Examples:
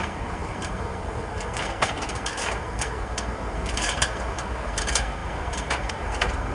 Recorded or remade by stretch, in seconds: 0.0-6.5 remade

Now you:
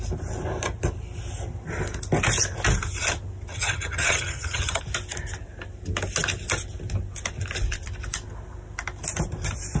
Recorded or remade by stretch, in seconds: 0.0-3.5 recorded; 3.5-4.8 remade; 4.8-9.8 recorded

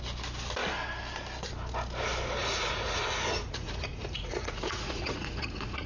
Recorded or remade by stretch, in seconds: 0.0-2.4 recorded; 2.4-5.9 remade

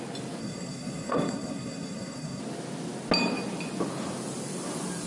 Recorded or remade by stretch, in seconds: 0.0-0.4 recorded; 0.4-2.4 remade; 2.4-5.1 recorded

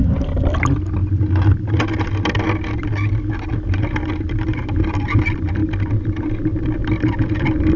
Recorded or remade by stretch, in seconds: 0.0-7.8 recorded

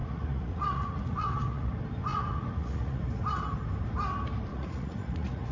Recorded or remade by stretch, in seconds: 0.0-1.7 remade; 1.7-2.1 recorded; 2.1-3.0 remade; 3.0-4.5 recorded; 4.5-5.5 remade

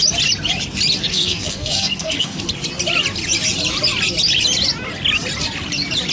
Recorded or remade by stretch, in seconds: 0.0-1.1 recorded; 1.1-2.4 remade; 2.4-6.1 recorded